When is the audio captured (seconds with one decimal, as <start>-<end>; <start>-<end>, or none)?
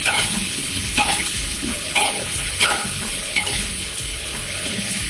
none